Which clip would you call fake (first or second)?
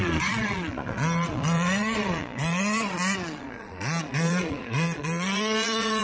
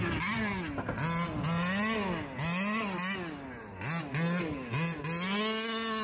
first